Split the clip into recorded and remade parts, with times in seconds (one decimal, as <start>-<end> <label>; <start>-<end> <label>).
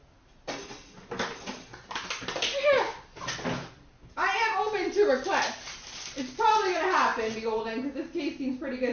0.0-8.9 recorded